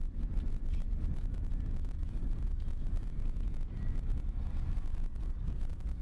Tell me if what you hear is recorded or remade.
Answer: recorded